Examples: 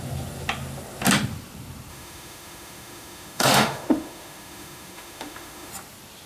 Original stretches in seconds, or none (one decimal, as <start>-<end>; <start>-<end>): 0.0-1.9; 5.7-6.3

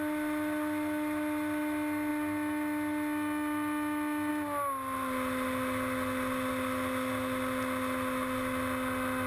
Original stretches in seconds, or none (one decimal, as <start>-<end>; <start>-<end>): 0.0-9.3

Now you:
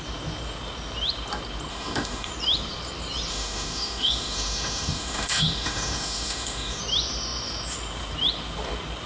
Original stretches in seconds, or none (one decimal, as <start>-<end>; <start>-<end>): 0.0-1.7; 2.3-3.3; 6.8-9.1